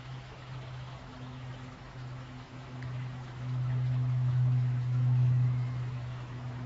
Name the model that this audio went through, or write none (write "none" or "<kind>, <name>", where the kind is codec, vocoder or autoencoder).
autoencoder, DAC-VAE